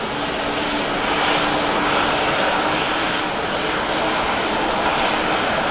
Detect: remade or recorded recorded